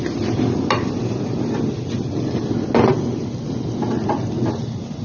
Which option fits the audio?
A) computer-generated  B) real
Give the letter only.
B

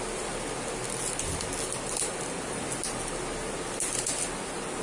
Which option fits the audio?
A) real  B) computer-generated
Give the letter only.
A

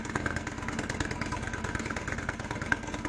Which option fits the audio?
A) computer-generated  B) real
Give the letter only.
A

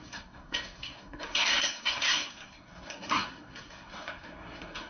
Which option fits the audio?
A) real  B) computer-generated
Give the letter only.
B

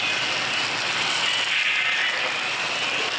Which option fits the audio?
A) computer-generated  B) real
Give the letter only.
B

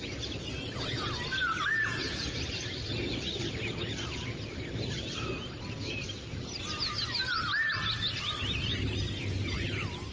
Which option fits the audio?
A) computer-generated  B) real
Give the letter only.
B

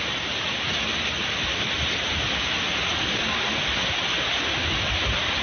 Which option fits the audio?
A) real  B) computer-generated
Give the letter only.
A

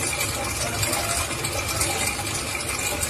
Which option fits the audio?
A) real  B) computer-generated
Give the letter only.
A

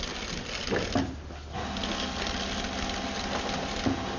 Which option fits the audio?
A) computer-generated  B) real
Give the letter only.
B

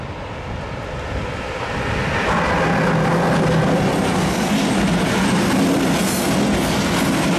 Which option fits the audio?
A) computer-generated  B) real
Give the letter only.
B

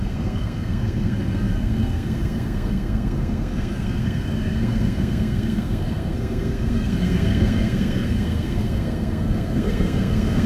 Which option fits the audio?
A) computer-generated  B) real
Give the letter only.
A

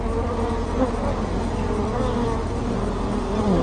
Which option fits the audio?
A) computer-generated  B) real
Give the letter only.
B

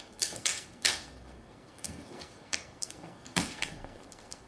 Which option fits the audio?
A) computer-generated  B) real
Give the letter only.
A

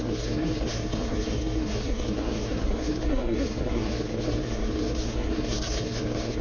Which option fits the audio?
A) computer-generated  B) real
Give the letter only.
A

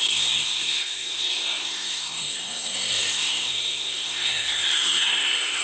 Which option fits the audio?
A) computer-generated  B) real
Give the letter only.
A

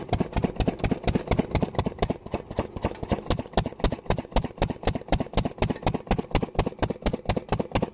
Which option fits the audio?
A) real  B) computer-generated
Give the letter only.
A